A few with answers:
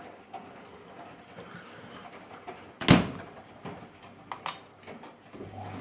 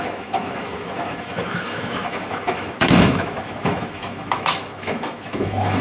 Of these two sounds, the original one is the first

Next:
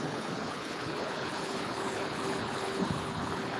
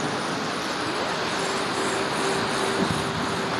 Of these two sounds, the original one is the second